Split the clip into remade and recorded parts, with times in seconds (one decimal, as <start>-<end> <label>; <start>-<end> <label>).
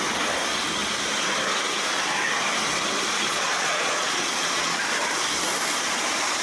0.0-3.3 recorded; 3.3-4.8 remade; 4.8-6.4 recorded